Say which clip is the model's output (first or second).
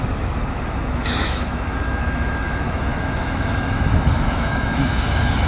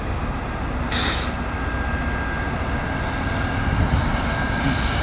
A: first